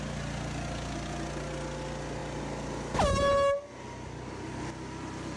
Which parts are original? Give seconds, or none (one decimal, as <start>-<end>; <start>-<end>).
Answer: 0.0-5.4